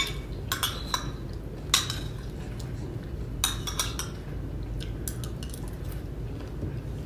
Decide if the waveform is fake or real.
real